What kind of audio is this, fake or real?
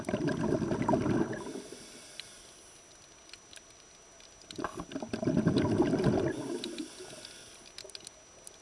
real